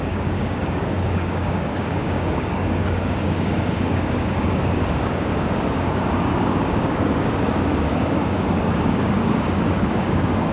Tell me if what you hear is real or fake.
fake